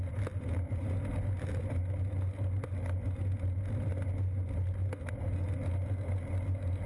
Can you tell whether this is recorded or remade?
recorded